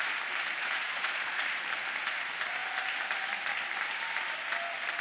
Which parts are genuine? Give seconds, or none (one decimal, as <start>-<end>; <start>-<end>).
0.0-0.6; 1.4-5.0